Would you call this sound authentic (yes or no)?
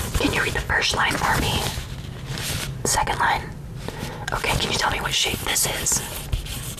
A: yes